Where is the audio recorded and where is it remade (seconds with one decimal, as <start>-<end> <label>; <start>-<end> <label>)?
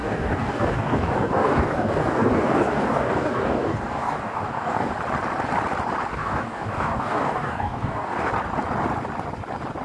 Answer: 0.0-4.9 remade; 4.9-6.1 recorded; 6.1-8.3 remade; 8.3-9.8 recorded